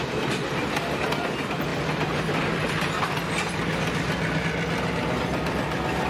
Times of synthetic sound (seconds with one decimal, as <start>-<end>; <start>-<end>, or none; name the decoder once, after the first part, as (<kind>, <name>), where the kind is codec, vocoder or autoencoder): none